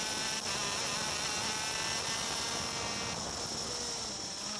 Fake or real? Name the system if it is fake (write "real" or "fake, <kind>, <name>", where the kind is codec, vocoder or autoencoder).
real